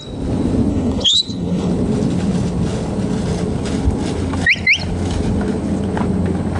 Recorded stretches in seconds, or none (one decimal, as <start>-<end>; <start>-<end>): 0.0-0.7; 1.7-6.6